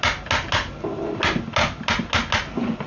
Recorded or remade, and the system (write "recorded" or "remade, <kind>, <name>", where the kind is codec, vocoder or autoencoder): recorded